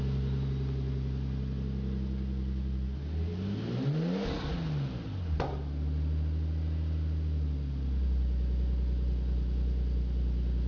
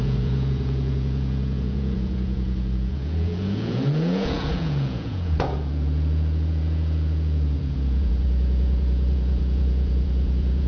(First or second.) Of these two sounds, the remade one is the second